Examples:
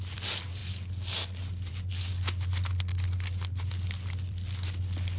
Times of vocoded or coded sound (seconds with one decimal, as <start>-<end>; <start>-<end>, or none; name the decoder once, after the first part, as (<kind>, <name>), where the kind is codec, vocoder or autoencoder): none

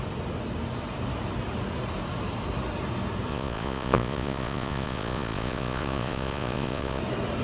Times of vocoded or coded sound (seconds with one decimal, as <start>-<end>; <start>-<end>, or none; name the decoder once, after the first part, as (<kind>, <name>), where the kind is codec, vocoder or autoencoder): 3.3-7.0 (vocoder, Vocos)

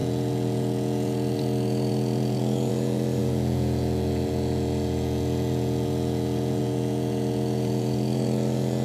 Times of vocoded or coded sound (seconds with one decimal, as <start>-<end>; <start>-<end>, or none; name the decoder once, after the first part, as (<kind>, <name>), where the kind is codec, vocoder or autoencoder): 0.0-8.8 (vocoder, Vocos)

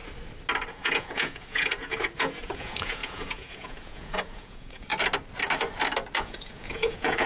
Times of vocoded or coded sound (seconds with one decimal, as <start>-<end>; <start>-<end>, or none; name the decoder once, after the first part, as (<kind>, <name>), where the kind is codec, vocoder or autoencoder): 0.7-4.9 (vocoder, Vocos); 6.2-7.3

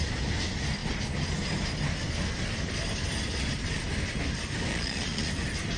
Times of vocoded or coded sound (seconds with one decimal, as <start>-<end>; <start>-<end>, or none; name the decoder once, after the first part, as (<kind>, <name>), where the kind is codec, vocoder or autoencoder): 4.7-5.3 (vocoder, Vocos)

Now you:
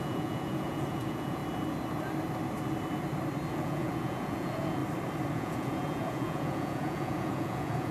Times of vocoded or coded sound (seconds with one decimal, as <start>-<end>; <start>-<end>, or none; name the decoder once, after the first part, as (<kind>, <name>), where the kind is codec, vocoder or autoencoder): 0.0-1.4 (vocoder, Vocos); 3.5-4.8; 5.3-7.9

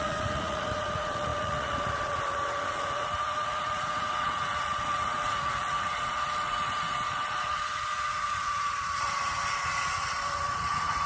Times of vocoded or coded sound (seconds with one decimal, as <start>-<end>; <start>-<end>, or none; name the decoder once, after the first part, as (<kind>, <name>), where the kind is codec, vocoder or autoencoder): 0.0-11.1 (vocoder, Vocos)

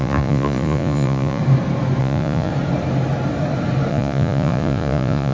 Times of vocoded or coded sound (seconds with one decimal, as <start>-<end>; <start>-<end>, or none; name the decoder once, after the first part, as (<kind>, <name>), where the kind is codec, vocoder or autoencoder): 0.0-1.4 (vocoder, Vocos); 2.0-2.5; 3.9-5.3